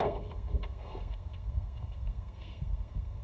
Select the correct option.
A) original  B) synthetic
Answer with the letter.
B